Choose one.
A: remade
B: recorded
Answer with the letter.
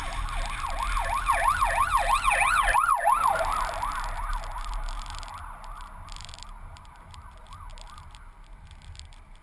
B